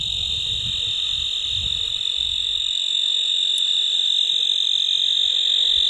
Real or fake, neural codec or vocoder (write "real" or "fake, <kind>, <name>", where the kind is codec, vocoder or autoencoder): real